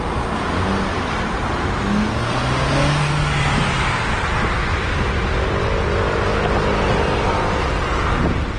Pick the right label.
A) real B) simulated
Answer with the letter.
A